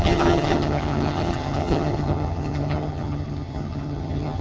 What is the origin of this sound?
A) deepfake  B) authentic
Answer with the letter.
A